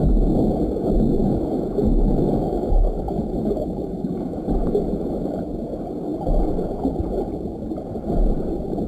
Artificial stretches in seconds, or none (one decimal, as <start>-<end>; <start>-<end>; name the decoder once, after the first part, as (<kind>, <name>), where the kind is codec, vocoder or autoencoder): 1.2-5.4 (autoencoder, DAC-VAE)